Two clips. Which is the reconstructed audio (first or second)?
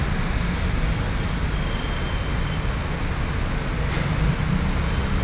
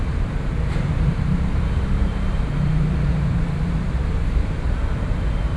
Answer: second